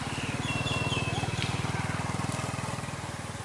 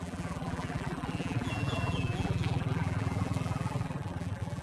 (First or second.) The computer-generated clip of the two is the second